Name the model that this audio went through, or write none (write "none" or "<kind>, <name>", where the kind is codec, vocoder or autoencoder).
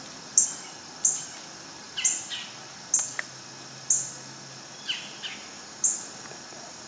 none